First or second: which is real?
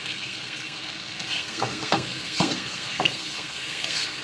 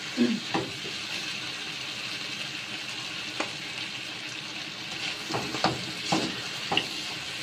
second